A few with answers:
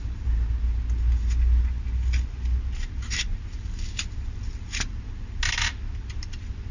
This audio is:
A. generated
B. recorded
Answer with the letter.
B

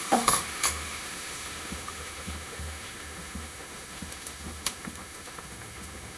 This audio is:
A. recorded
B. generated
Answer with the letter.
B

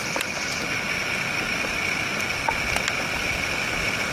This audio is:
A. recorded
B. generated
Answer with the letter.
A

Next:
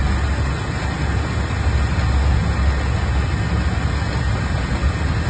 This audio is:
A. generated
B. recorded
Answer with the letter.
B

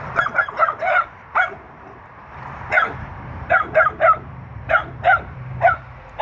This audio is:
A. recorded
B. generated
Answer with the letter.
B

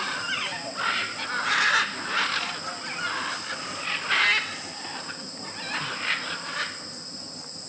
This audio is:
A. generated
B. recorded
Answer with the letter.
B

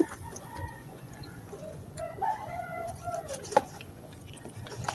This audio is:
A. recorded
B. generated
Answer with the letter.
B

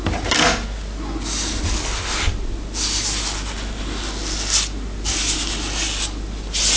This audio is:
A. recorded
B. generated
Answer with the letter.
A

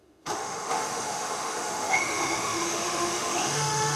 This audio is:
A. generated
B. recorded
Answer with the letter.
A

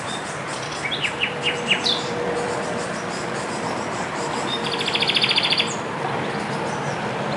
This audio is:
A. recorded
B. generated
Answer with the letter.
B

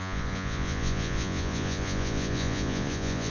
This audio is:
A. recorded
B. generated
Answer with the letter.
B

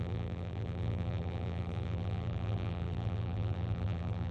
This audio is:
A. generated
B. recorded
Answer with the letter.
A